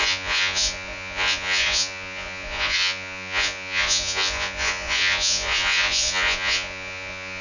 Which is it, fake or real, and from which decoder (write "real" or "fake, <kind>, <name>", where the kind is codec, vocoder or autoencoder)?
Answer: fake, vocoder, Vocos